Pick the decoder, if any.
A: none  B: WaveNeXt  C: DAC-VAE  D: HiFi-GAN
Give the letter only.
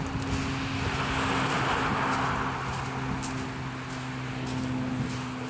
A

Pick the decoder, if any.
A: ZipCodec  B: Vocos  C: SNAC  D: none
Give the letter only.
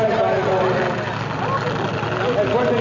D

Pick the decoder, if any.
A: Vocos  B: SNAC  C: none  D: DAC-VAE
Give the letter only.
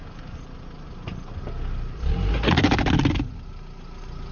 C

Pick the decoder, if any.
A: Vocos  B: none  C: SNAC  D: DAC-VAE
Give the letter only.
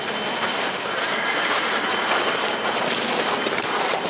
B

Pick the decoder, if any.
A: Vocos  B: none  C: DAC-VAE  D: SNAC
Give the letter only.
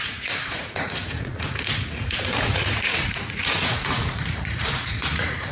A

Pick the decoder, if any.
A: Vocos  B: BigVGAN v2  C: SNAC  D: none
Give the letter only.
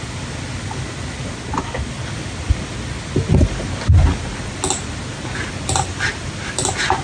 D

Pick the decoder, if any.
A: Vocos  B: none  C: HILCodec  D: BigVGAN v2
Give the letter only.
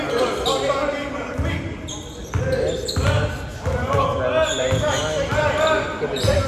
B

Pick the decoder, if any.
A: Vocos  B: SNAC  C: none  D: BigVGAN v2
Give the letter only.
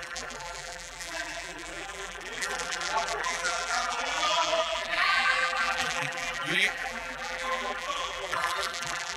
D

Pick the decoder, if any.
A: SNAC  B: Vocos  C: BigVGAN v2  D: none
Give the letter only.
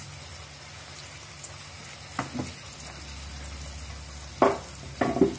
D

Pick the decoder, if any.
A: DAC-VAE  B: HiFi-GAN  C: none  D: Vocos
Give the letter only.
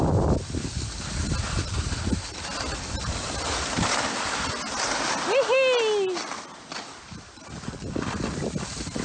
C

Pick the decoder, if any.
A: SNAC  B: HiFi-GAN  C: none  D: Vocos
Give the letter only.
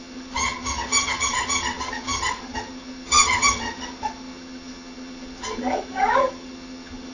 B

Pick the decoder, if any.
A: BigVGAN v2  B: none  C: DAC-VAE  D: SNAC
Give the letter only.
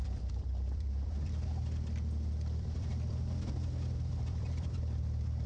A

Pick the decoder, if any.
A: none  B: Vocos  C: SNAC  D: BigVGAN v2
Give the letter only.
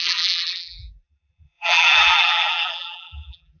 D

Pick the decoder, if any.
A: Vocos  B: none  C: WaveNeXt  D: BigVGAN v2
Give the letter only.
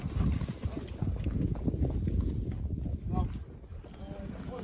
B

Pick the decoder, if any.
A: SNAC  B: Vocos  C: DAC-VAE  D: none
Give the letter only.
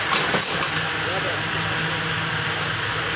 D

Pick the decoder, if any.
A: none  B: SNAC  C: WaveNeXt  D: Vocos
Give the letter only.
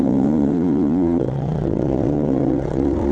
C